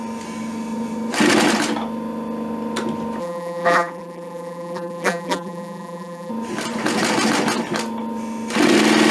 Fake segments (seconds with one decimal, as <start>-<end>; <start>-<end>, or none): 3.2-6.3

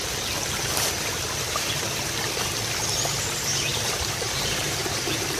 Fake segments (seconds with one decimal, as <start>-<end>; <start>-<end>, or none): 3.2-5.4

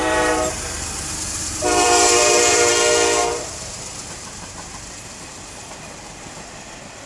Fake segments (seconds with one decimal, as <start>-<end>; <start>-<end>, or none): 0.0-1.0; 1.5-2.7; 3.2-4.9

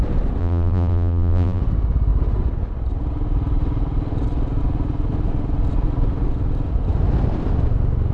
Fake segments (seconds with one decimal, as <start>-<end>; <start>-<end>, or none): 0.4-1.6

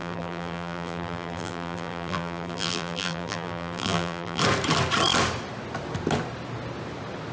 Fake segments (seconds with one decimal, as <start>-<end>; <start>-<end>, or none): 0.0-4.4

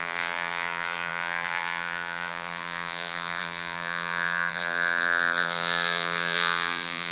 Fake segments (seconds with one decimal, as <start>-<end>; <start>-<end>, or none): 0.0-7.1